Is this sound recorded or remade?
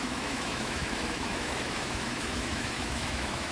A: remade